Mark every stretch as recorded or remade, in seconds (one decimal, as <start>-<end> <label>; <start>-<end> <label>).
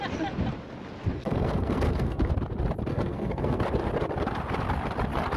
0.0-1.2 recorded; 1.2-2.3 remade; 2.3-2.9 recorded; 2.9-3.6 remade; 3.6-5.4 recorded